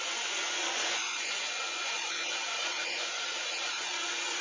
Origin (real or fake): fake